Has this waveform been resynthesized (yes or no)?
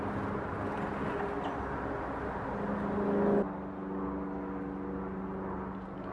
no